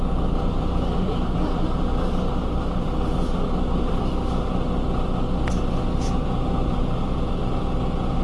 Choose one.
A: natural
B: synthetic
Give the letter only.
A